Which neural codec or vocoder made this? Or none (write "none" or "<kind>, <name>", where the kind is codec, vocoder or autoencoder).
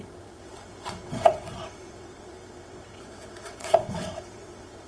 vocoder, WaveNeXt